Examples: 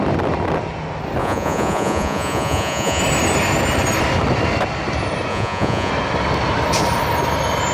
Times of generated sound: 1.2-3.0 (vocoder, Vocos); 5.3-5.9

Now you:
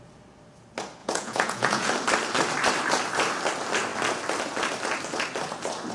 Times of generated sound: 1.0-1.9 (vocoder, Vocos)

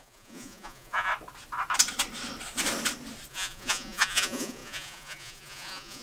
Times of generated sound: 0.0-1.1 (vocoder, Vocos); 3.3-6.0

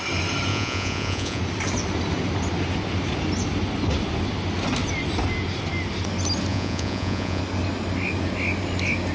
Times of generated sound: 0.5-1.4 (vocoder, Vocos); 6.5-7.4

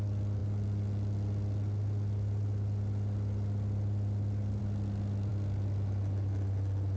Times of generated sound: none

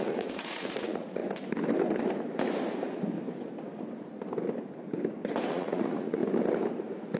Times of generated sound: 0.0-1.2 (vocoder, Vocos); 5.5-6.2

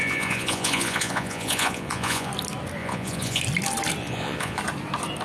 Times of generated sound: 0.0-2.3 (vocoder, Vocos); 2.8-3.4; 4.0-4.6

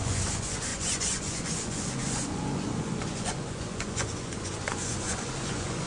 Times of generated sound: 0.0-5.9 (vocoder, Vocos)